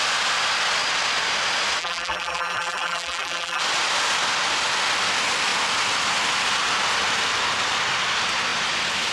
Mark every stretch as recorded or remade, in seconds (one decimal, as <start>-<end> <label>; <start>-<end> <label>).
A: 0.0-1.8 recorded; 1.8-3.6 remade; 3.6-9.1 recorded